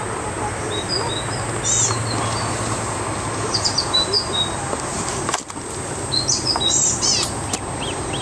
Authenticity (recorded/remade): recorded